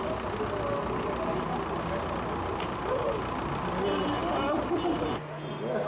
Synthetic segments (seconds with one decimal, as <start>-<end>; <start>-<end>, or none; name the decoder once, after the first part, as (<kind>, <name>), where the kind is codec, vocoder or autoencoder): none